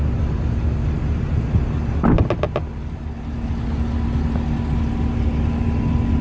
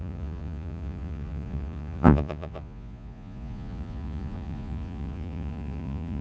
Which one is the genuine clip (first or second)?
first